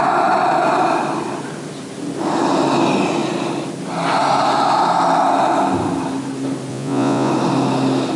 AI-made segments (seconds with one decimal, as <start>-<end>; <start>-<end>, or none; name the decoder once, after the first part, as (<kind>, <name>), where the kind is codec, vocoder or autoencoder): 6.7-7.3 (vocoder, Vocos)